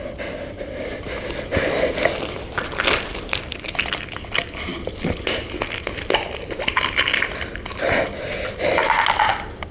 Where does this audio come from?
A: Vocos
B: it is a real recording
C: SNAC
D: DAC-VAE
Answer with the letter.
B